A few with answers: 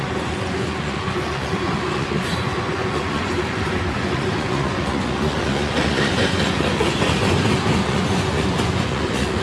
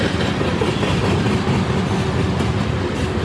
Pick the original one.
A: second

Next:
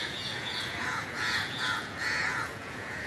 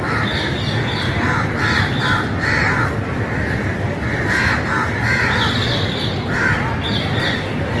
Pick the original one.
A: second